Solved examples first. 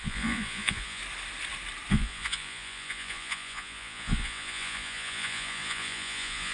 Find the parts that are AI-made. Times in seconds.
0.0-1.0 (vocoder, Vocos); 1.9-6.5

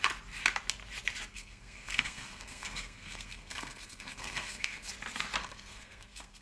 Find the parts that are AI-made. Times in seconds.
1.3-4.9 (codec, SNAC); 5.4-6.4

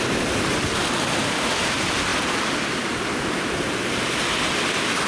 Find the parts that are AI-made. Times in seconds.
0.0-0.8 (vocoder, BigVGAN v2); 1.3-5.1

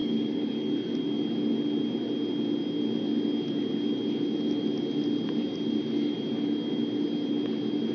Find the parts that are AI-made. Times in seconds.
0.0-0.5 (codec, DAC)